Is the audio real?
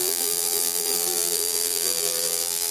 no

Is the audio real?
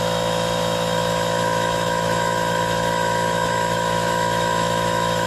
no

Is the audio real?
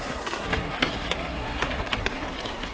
no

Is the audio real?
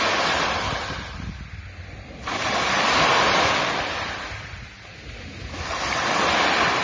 yes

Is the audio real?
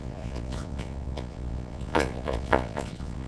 no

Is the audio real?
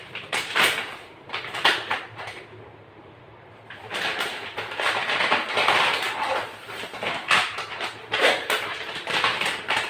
no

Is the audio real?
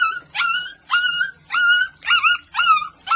yes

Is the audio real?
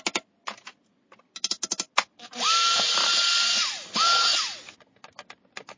yes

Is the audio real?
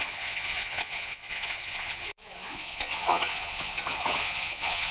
no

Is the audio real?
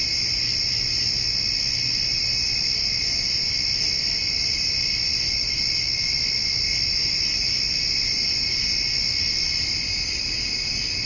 yes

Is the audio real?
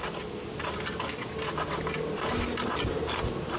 yes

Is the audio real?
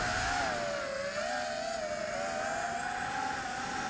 yes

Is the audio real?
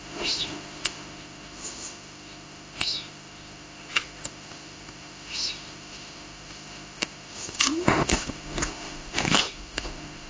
no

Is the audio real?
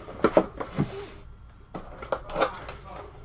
yes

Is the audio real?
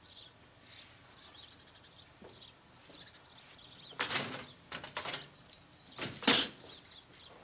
yes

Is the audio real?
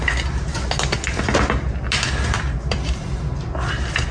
yes